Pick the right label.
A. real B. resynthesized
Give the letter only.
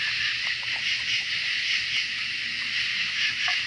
A